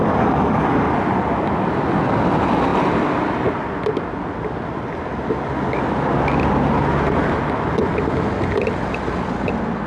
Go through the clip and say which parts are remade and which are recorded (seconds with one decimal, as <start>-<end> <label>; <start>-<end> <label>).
0.0-0.9 remade; 0.9-9.9 recorded